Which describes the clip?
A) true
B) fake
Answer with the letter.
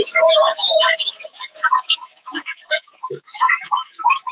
B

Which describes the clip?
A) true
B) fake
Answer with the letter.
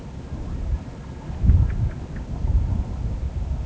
A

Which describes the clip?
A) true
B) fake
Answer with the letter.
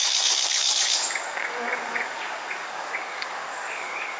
B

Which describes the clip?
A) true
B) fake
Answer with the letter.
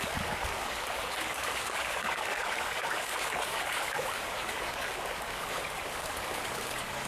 B